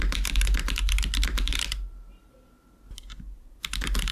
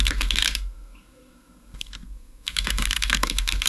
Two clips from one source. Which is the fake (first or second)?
second